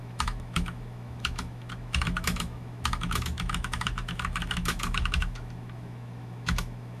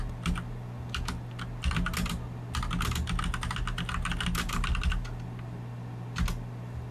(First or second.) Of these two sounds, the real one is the second